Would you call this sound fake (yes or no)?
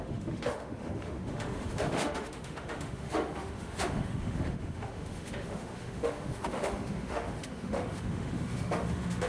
yes